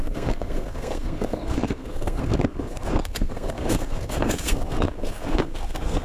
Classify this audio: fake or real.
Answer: fake